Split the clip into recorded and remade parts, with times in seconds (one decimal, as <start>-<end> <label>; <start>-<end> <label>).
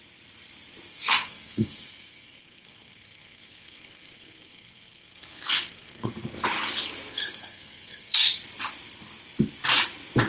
0.0-0.9 recorded; 0.9-6.1 remade; 6.1-7.1 recorded; 7.1-8.4 remade; 8.4-10.3 recorded